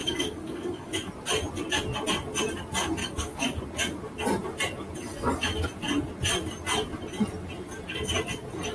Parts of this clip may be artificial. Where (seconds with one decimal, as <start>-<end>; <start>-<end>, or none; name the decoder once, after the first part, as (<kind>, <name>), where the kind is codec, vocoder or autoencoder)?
0.0-1.1 (codec, DAC); 3.0-3.6